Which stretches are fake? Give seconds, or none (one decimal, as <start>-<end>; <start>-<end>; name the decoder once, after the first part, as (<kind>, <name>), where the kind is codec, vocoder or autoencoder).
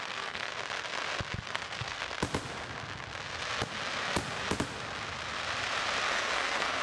0.0-0.5 (codec, SNAC); 1.4-2.0; 6.1-6.8